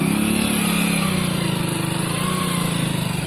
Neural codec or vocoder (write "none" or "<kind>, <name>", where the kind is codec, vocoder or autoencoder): none